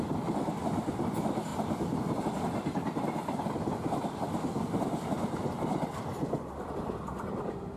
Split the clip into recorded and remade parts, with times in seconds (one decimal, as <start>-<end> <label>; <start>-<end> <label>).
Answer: 0.0-7.8 recorded